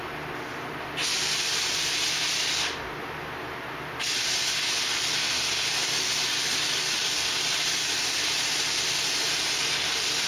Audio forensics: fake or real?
real